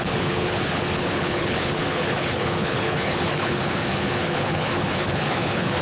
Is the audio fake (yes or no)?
yes